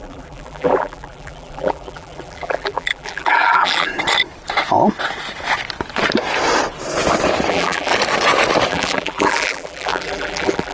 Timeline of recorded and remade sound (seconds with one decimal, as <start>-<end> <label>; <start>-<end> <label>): 0.0-3.9 remade; 3.9-7.5 recorded; 7.5-7.9 remade; 7.9-8.7 recorded; 8.7-10.7 remade